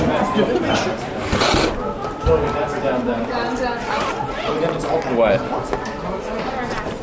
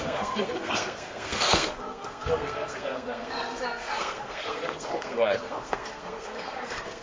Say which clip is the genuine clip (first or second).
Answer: first